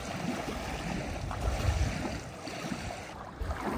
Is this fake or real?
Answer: real